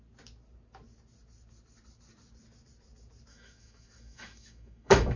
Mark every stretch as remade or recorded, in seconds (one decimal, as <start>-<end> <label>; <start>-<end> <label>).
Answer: 0.0-3.3 recorded; 3.3-5.2 remade